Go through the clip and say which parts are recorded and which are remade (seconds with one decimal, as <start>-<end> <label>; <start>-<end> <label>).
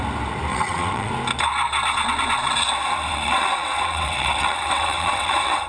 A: 0.0-0.5 recorded; 0.5-1.1 remade; 1.1-3.1 recorded; 3.1-5.7 remade